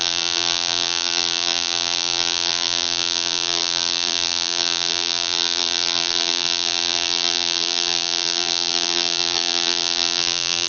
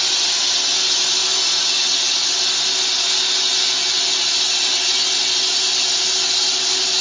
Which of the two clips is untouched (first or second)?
second